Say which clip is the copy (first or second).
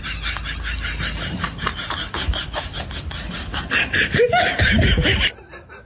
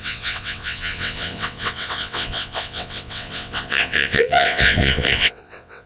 second